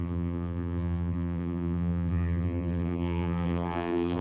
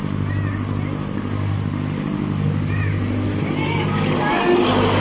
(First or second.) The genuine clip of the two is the second